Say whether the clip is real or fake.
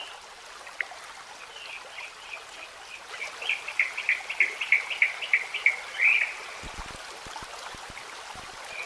real